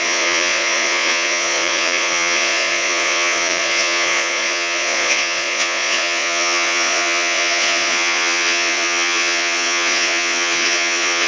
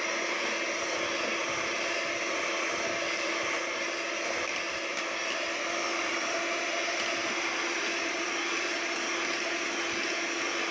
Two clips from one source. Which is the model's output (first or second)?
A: first